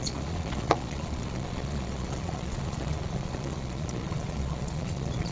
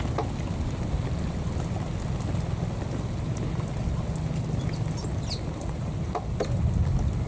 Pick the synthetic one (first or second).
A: first